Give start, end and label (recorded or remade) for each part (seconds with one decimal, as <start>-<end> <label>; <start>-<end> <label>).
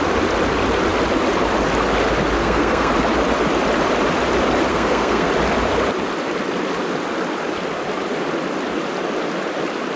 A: 0.0-2.4 recorded; 2.4-2.9 remade; 2.9-4.7 recorded; 4.7-5.3 remade; 5.3-10.0 recorded